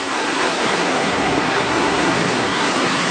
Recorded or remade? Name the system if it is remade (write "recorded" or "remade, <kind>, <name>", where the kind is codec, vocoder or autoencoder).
remade, codec, SNAC